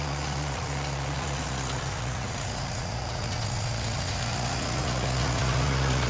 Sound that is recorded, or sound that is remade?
remade